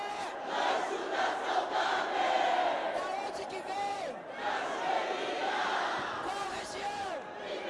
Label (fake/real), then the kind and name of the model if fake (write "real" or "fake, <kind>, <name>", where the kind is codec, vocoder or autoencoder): fake, vocoder, BigVGAN v2